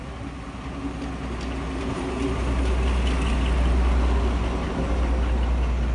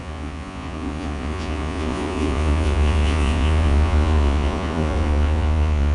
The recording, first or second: first